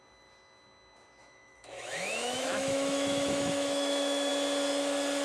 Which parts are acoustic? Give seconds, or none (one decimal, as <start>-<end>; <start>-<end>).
0.0-1.2; 4.3-5.2